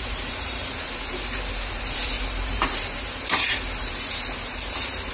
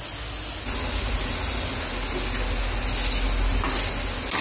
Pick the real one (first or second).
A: second